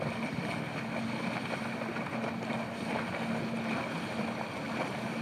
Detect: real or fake real